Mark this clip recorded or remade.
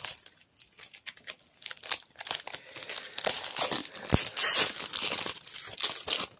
recorded